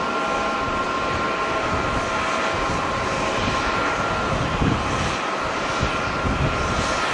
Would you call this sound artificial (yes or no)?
no